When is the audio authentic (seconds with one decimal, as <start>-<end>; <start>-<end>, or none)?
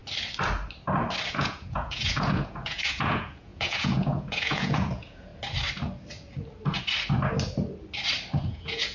0.0-1.3; 5.3-8.4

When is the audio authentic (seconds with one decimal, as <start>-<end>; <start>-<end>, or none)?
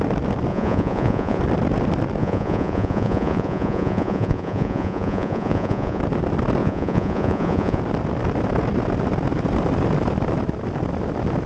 0.0-0.5; 1.4-2.2; 6.0-6.6; 7.8-11.5